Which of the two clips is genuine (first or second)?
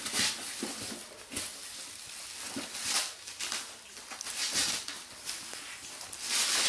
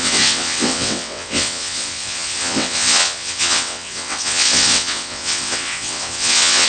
first